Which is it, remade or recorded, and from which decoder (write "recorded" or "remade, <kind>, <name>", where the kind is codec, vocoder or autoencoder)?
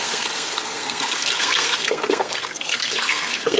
remade, codec, SNAC